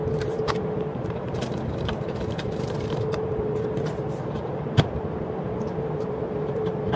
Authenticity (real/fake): fake